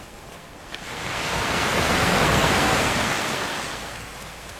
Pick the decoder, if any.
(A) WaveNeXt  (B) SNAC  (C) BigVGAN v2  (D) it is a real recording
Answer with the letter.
B